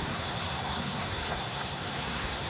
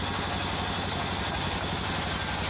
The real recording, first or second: second